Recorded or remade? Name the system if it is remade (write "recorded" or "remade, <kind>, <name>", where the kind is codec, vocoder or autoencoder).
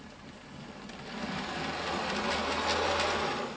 recorded